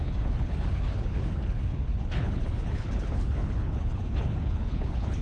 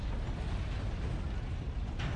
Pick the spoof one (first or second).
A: first